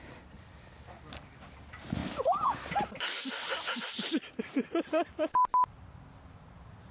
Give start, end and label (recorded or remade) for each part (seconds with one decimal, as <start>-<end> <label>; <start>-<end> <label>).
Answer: 0.0-6.9 recorded